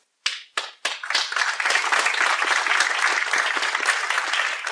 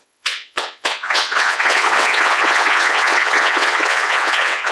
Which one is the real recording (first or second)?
first